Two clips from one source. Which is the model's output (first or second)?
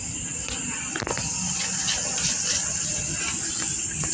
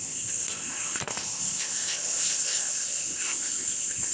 second